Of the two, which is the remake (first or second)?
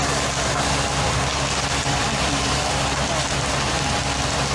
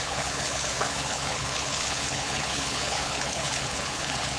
second